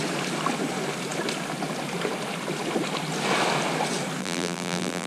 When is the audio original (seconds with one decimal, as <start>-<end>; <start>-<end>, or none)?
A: 0.0-4.2